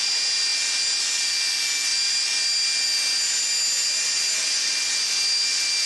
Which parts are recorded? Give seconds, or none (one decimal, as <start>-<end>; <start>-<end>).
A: 0.0-5.9